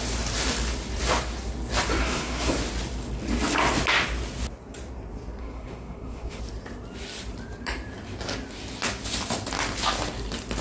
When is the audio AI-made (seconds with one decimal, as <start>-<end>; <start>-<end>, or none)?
2.0-2.5; 5.4-6.4